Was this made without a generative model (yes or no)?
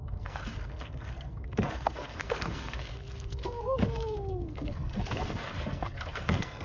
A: no